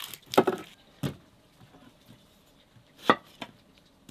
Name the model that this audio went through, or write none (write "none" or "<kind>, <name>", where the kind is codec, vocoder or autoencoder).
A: none